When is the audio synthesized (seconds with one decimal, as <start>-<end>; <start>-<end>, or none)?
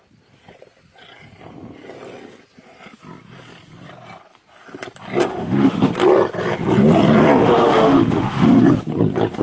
5.3-5.9; 7.4-8.6